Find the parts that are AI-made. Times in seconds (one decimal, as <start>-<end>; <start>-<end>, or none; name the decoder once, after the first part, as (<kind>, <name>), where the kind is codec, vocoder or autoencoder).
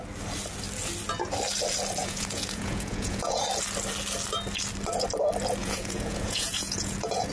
2.0-3.4 (vocoder, Vocos); 5.6-7.3